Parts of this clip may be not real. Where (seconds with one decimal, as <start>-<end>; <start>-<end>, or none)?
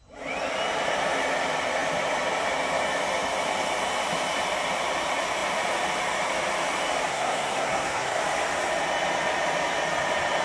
7.1-8.2